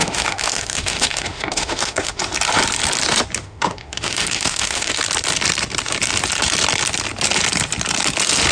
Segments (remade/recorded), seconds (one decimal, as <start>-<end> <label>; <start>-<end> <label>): 0.0-2.2 remade; 2.2-3.4 recorded; 3.4-5.0 remade; 5.0-8.5 recorded